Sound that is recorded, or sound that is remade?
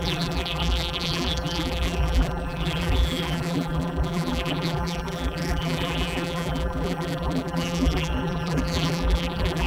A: remade